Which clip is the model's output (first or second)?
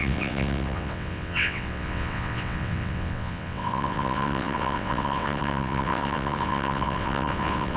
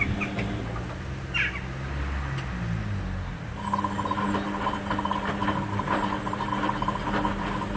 first